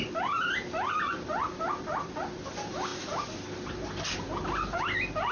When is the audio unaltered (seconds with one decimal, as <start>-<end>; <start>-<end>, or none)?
2.9-5.3